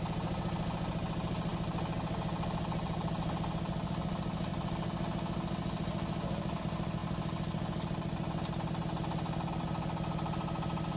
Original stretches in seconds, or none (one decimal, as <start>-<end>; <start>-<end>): 0.0-11.0